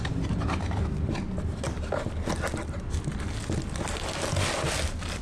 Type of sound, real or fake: real